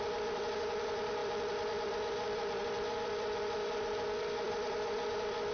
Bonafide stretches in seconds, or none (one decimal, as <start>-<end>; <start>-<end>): none